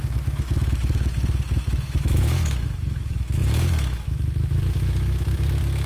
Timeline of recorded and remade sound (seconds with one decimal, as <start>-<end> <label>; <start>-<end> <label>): 0.0-5.9 remade